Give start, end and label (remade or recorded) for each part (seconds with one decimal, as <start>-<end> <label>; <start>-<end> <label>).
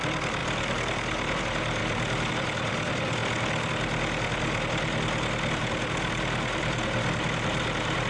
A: 0.0-3.2 remade; 3.2-5.5 recorded; 5.5-8.1 remade